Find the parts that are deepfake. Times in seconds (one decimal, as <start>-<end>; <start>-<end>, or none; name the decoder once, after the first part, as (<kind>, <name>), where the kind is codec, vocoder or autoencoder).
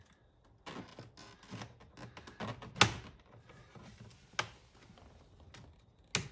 none